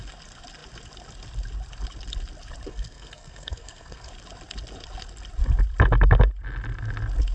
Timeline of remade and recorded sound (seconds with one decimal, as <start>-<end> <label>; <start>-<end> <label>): 0.0-2.7 recorded; 2.7-4.1 remade; 4.1-7.3 recorded